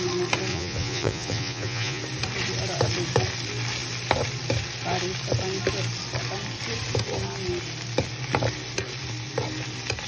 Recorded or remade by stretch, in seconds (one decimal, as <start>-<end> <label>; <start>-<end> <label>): 0.0-0.5 recorded; 0.5-2.0 remade; 2.0-10.1 recorded